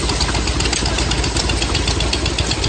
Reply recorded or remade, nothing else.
recorded